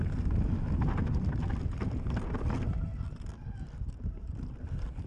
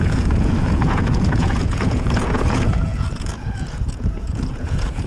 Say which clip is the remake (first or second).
second